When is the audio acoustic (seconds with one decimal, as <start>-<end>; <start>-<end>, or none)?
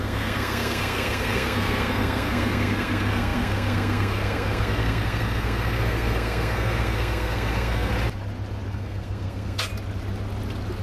7.9-8.7; 9.7-10.8